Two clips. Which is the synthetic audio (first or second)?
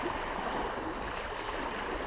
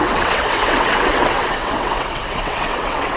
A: second